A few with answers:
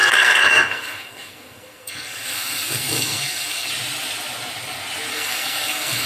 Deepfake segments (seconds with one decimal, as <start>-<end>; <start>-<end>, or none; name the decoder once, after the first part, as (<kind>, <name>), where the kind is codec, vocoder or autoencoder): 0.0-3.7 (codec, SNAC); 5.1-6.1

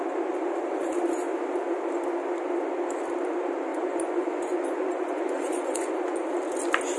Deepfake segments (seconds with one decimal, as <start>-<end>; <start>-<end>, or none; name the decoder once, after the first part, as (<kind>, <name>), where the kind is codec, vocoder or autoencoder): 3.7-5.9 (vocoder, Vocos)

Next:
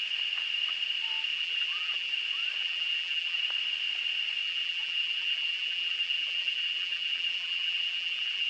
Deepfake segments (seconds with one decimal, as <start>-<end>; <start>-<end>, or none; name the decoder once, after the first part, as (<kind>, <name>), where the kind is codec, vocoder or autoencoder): 1.3-2.1 (vocoder, BigVGAN v2); 2.6-3.4; 4.4-8.5

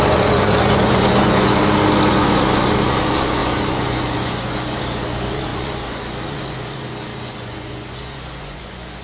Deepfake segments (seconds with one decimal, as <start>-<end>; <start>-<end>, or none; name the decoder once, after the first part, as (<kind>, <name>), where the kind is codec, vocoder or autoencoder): 0.0-1.6 (vocoder, Vocos); 2.1-9.0